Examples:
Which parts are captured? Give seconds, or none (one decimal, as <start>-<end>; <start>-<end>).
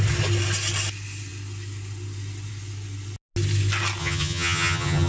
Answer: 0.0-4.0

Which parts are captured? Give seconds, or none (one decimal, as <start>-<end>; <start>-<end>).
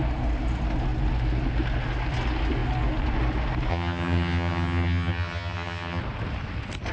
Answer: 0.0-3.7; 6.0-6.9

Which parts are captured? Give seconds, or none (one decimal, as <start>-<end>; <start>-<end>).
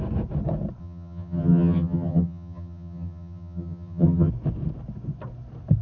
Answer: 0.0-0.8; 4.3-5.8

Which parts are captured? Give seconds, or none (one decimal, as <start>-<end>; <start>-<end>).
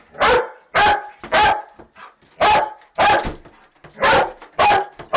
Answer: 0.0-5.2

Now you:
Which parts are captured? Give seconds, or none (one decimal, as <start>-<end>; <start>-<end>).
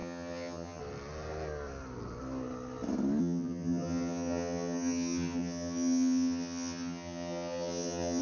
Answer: 0.8-3.2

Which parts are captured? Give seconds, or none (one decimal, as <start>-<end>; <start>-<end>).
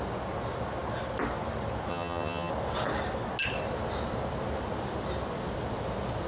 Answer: 0.0-1.9; 2.5-6.3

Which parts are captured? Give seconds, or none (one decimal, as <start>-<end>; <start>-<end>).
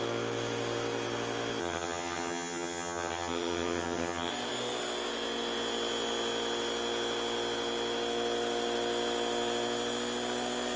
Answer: 0.0-1.6; 4.3-10.8